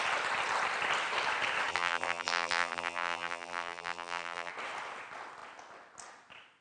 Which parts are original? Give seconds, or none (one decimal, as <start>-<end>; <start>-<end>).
0.0-1.7; 4.5-6.6